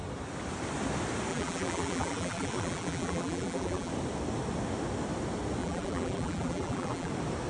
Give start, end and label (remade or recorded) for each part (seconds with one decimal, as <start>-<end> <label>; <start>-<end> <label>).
0.0-1.3 recorded; 1.3-3.9 remade; 3.9-5.6 recorded; 5.6-7.1 remade; 7.1-7.5 recorded